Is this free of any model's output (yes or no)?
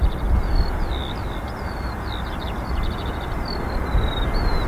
yes